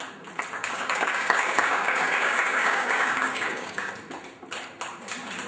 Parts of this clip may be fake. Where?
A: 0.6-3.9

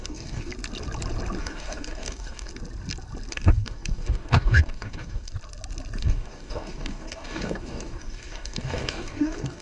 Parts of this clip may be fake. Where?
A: 0.0-0.5; 1.4-2.5; 3.3-5.3; 6.0-9.6

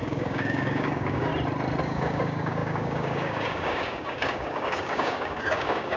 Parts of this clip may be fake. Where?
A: 0.0-1.3; 1.8-6.0

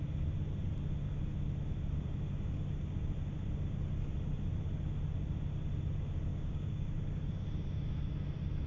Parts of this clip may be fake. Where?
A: 6.3-6.9

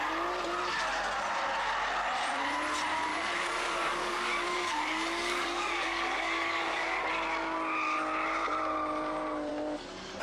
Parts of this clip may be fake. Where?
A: 3.1-7.1

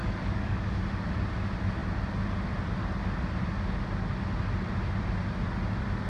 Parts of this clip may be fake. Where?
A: 0.0-0.8

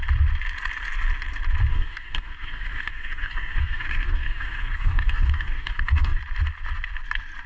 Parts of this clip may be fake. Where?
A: 1.7-6.2